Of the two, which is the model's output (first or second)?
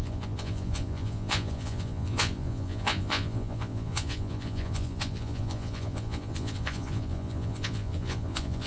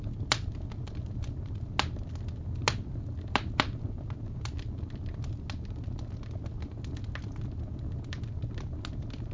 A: first